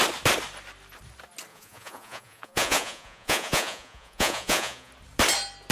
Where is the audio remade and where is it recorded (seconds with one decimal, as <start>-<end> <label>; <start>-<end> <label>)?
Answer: 0.0-1.5 recorded; 1.5-4.9 remade; 4.9-5.7 recorded